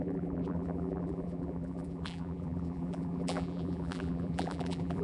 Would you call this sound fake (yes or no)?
yes